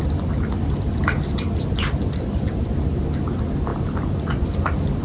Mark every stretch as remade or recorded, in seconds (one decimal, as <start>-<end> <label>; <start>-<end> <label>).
0.0-3.7 recorded; 3.7-5.0 remade